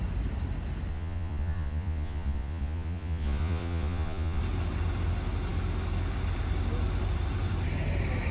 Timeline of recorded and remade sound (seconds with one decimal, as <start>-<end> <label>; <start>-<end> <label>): 0.0-0.9 recorded; 0.9-4.4 remade; 4.4-8.3 recorded